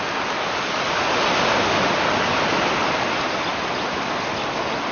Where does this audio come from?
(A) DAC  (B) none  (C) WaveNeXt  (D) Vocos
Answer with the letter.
B